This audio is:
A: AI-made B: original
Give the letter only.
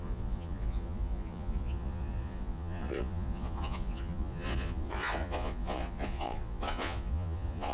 A